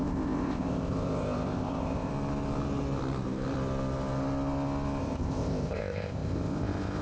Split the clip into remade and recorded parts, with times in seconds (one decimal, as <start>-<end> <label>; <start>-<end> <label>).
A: 0.0-2.1 remade; 2.1-5.0 recorded; 5.0-7.0 remade